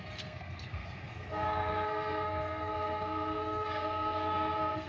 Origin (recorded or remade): remade